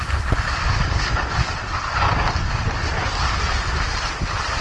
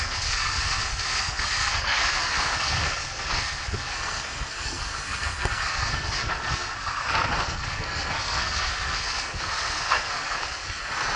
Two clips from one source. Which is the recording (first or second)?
first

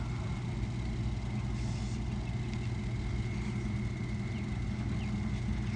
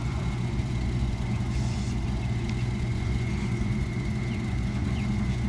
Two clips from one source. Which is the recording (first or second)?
first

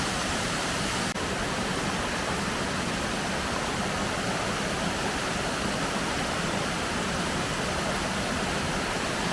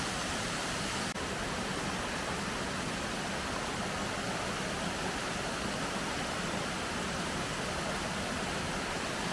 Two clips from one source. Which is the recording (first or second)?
second